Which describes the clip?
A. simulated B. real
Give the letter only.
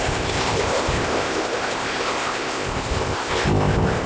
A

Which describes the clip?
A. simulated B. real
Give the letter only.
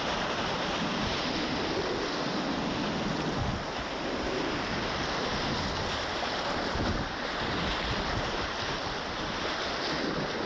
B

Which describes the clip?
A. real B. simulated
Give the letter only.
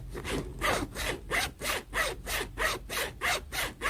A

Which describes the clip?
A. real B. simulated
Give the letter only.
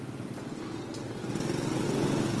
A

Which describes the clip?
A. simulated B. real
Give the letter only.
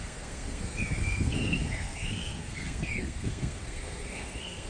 A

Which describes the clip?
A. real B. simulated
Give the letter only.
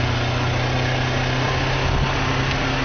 A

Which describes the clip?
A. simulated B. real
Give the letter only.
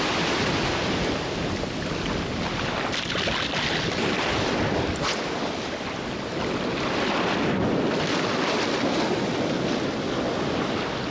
B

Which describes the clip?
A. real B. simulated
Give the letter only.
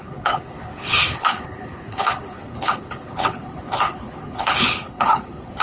B